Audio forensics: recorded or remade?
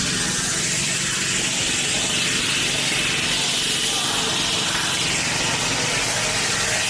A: recorded